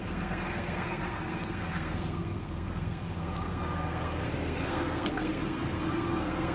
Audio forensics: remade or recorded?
remade